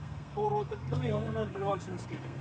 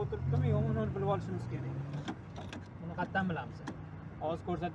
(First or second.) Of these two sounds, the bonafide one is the second